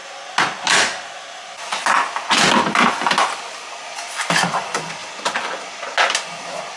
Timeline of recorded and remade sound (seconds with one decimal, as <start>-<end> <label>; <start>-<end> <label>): 0.0-6.8 recorded